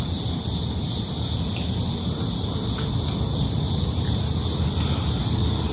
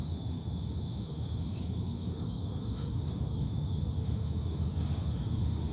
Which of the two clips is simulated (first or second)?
second